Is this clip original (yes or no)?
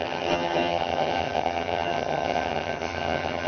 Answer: no